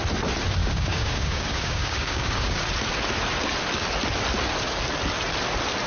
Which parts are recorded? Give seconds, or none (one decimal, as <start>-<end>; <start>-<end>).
0.0-0.6; 2.6-5.9